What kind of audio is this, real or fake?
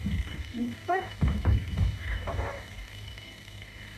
fake